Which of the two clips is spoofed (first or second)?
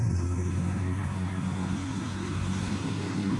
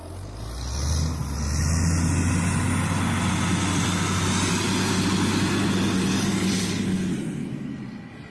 first